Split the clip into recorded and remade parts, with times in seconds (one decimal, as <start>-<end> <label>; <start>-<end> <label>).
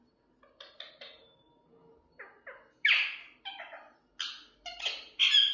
0.0-5.5 recorded